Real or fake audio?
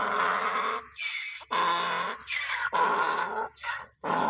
real